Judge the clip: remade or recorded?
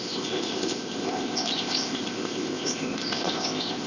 remade